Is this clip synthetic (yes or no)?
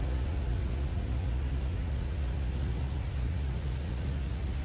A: yes